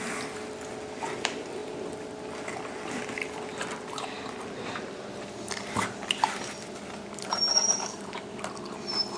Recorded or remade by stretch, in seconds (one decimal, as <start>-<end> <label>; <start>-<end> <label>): 0.0-7.5 recorded; 7.5-8.4 remade; 8.4-9.2 recorded